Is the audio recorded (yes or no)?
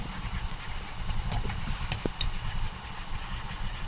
no